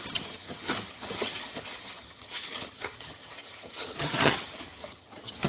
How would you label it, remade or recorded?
remade